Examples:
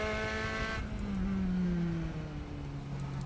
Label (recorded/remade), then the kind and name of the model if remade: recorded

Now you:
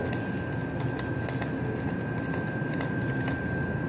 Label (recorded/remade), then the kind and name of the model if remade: recorded